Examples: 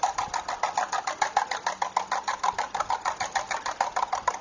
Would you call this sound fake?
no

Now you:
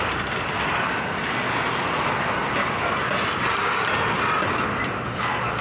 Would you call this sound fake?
no